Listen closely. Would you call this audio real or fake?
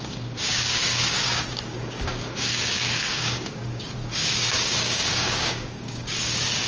fake